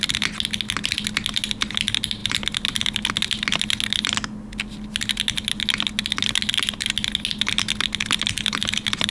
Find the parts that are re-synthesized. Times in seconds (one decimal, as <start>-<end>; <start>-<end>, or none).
none